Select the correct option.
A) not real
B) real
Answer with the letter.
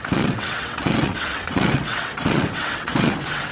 A